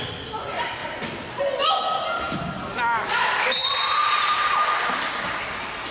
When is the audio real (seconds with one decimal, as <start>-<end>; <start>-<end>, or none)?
0.0-5.9